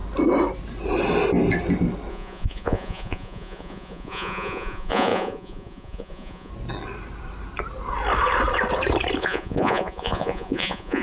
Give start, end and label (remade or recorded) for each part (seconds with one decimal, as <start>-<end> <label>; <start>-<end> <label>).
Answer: 0.0-2.1 recorded; 2.1-6.5 remade; 6.5-9.2 recorded; 9.2-11.0 remade